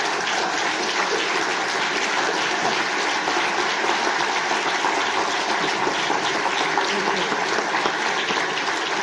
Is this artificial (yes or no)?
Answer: no